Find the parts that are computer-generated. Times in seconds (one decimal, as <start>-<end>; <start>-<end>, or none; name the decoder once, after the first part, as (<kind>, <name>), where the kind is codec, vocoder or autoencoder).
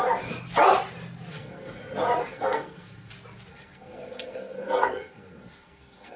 1.3-1.8 (codec, SNAC); 2.2-3.1; 3.5-6.2